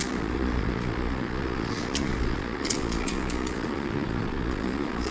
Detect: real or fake fake